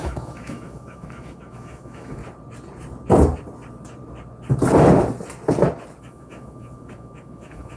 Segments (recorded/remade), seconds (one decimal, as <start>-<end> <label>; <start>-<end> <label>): 0.0-2.2 remade; 2.2-6.0 recorded; 6.0-7.8 remade